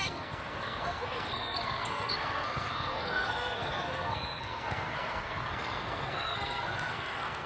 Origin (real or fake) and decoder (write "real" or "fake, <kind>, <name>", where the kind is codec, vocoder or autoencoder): fake, codec, SNAC